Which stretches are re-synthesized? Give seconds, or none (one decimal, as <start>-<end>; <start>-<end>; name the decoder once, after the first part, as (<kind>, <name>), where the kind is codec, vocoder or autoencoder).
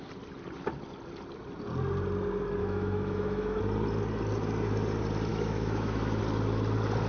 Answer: 2.6-3.6 (autoencoder, DAC-VAE); 5.3-6.2